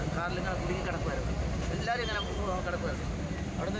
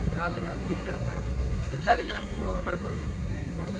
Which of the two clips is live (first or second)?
first